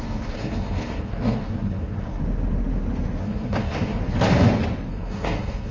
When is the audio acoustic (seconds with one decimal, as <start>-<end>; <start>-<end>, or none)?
2.2-3.2; 4.0-4.9